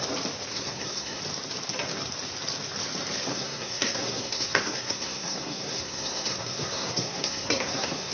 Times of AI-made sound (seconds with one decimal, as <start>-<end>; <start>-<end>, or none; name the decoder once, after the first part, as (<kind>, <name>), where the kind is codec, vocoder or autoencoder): 0.5-1.2 (codec, SNAC); 3.3-8.1